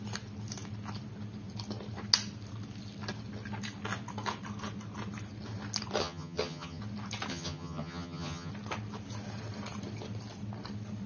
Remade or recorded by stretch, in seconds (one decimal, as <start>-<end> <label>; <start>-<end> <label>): 0.0-6.0 recorded; 6.0-6.8 remade; 6.8-7.3 recorded; 7.3-8.5 remade; 8.5-11.1 recorded